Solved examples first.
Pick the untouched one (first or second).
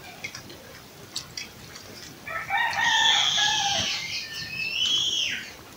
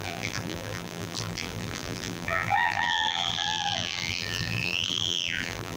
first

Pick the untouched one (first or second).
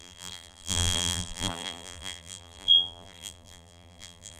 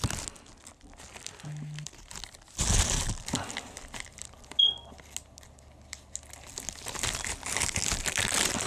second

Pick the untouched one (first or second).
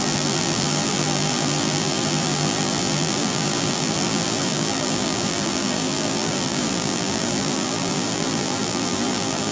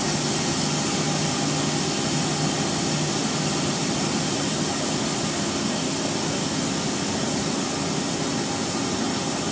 second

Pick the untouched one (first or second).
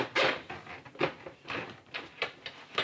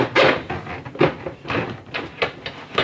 second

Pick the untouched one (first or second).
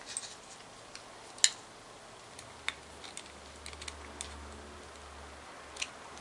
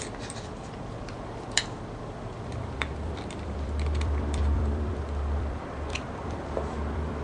first